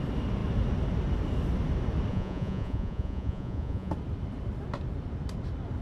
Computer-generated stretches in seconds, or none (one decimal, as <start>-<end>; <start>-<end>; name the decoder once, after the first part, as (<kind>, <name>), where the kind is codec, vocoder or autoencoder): 2.1-3.9 (vocoder, Vocos)